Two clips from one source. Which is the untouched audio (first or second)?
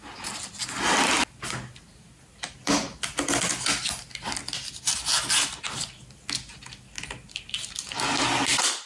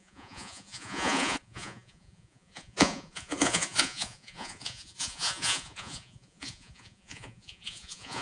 first